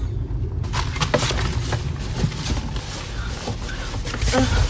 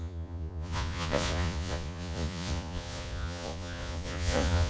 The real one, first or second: first